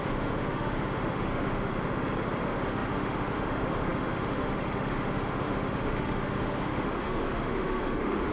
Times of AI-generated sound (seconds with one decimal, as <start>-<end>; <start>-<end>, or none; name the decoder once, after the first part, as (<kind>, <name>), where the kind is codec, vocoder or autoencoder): 0.0-1.7 (autoencoder, DAC-VAE); 2.4-8.3